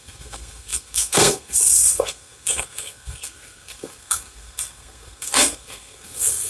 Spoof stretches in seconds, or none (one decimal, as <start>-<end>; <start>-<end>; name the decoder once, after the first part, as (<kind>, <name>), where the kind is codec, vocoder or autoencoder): 0.0-6.5 (codec, SNAC)